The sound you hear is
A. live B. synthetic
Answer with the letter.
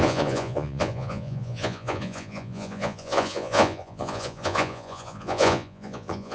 B